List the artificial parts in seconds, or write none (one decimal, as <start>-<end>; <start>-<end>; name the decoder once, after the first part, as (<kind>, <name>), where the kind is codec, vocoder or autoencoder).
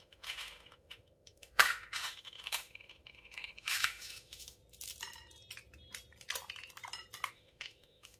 0.0-4.6 (autoencoder, DAC-VAE); 7.3-8.2